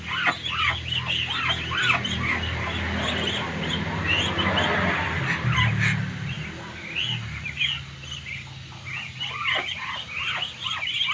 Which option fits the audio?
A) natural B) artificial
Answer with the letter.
A